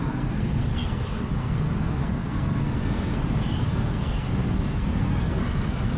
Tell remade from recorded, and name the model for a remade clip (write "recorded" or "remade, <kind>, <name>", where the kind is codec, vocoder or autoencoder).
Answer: remade, codec, SNAC